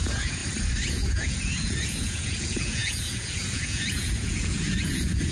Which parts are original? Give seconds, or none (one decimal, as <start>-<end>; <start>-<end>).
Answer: 0.4-0.9

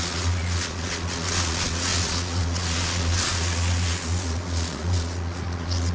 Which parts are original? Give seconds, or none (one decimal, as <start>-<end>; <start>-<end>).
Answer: none

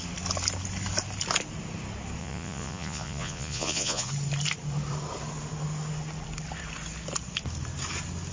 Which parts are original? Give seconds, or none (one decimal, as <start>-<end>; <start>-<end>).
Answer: 0.0-2.2; 4.1-8.3

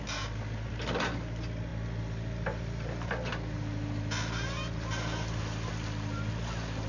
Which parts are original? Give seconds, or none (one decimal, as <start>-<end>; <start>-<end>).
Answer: 0.0-6.9

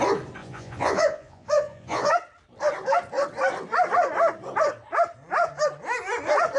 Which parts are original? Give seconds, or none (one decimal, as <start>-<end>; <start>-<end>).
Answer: 0.0-0.4; 2.1-6.6